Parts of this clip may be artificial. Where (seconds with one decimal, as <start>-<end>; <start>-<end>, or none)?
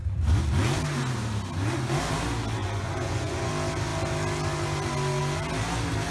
2.6-3.5